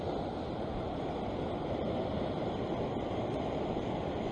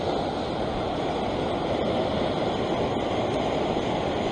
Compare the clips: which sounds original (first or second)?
second